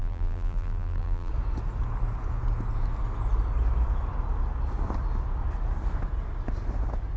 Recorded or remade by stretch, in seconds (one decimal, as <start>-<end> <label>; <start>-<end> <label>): 0.0-1.3 remade; 1.3-7.2 recorded